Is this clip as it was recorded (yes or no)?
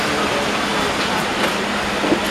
yes